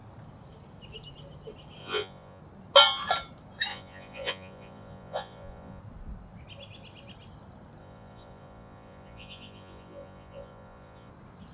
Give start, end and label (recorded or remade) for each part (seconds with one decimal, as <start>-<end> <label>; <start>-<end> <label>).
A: 0.0-1.8 recorded; 1.8-2.4 remade; 2.4-3.7 recorded; 3.7-5.8 remade; 5.8-7.8 recorded; 7.8-11.1 remade; 11.1-11.5 recorded